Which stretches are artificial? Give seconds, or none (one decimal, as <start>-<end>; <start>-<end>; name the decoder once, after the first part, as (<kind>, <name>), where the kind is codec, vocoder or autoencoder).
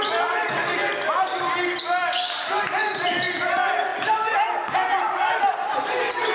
none